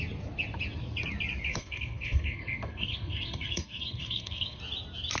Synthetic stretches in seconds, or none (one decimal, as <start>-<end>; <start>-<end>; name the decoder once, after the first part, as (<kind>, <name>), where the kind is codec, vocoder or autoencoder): 1.5-4.6 (codec, SNAC)